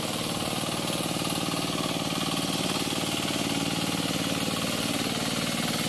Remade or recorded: recorded